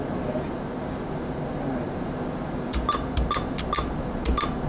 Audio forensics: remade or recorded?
recorded